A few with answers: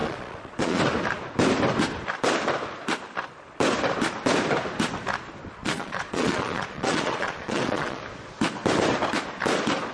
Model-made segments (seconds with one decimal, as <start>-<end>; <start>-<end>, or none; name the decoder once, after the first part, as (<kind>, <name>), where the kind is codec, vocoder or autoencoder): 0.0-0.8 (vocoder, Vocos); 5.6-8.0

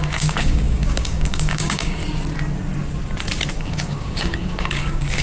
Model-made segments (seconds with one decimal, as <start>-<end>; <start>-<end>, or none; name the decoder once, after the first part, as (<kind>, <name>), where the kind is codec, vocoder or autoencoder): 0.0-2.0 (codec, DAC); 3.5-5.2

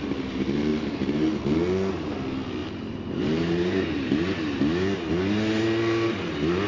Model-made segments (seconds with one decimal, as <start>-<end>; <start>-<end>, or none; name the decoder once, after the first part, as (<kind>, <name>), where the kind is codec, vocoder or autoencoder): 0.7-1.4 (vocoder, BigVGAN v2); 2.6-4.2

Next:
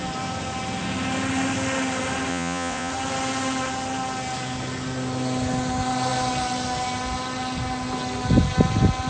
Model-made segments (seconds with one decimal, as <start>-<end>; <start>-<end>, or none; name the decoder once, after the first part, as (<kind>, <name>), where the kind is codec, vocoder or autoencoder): 2.3-2.9 (vocoder, Vocos)